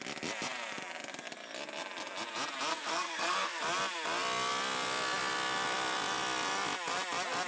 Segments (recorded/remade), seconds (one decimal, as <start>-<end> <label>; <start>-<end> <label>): 0.0-2.7 recorded; 2.7-3.6 remade; 3.6-7.5 recorded